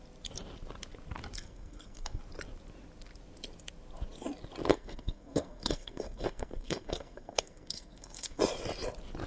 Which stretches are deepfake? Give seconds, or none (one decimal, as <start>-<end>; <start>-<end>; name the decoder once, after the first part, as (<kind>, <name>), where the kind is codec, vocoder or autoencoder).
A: 1.4-2.2 (codec, SNAC); 4.7-8.4